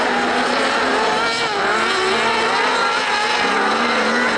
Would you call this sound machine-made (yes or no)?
no